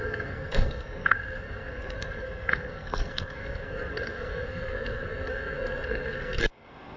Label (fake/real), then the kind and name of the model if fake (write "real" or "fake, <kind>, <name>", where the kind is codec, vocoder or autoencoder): fake, codec, SNAC